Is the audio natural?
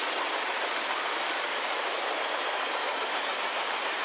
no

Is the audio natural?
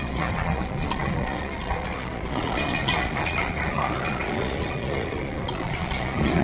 no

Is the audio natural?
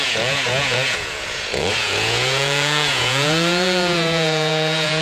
no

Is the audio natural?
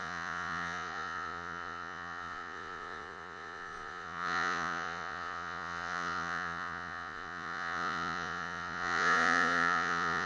no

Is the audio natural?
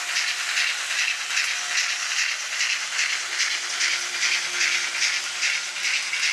yes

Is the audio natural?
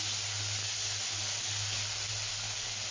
yes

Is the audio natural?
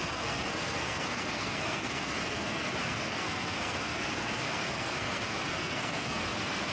no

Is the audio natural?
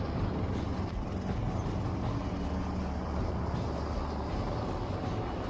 yes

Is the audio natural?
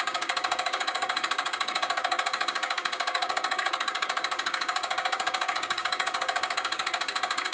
no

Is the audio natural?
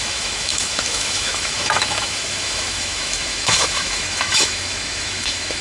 no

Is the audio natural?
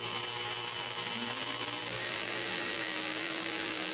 no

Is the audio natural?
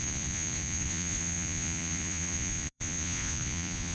no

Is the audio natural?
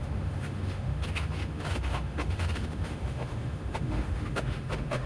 no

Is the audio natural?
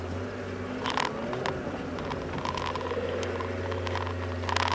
yes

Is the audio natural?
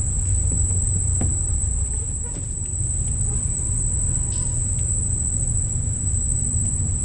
yes